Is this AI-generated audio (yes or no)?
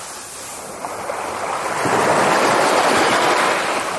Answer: no